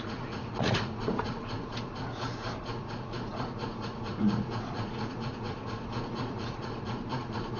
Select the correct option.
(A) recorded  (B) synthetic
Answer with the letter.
B